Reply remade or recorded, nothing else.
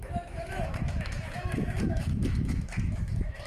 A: remade